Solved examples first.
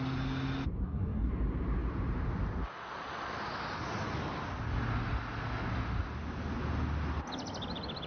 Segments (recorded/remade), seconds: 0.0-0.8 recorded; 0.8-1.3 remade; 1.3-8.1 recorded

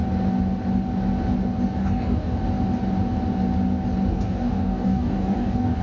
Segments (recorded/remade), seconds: 0.0-1.8 recorded; 1.8-2.4 remade; 2.4-4.1 recorded; 4.1-5.8 remade

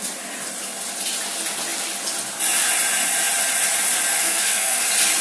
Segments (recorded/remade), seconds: 0.0-4.2 recorded; 4.2-4.8 remade; 4.8-5.2 recorded

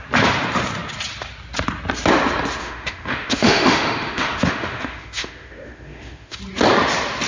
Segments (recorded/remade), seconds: 0.0-2.6 recorded; 2.6-6.4 remade; 6.4-7.3 recorded

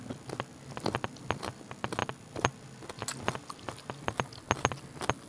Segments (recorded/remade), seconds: 0.0-5.3 recorded

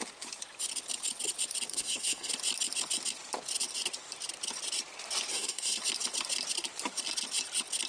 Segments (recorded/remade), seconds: 0.0-1.7 recorded; 1.7-2.3 remade; 2.3-5.3 recorded; 5.3-5.8 remade; 5.8-7.9 recorded

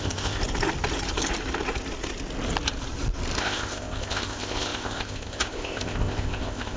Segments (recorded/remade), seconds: 0.0-0.4 remade; 0.4-3.4 recorded; 3.4-6.8 remade